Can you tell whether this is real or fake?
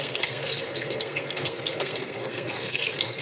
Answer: fake